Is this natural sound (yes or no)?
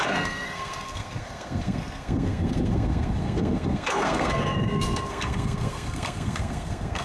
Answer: no